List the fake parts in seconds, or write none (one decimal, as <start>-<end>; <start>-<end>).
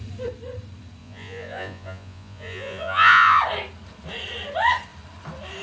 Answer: 1.0-3.4